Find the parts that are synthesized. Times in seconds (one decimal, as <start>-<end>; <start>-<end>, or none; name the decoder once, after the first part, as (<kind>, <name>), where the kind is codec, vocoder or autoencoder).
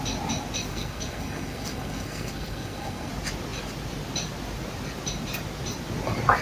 0.7-3.1 (codec, SNAC)